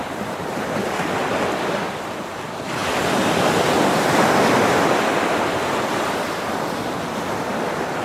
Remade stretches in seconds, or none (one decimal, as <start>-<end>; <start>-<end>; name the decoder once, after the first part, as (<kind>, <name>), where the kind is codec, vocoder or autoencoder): none